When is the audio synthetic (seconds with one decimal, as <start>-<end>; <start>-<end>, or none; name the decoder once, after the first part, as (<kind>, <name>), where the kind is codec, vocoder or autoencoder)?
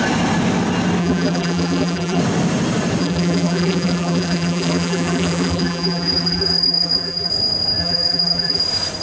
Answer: 1.0-2.2 (vocoder, BigVGAN v2); 3.0-7.3; 7.8-8.6